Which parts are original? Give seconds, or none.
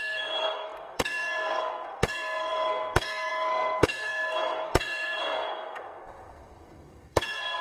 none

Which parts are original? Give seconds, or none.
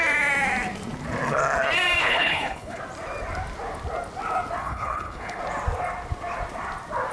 0.0-2.0; 2.8-4.6; 5.4-7.1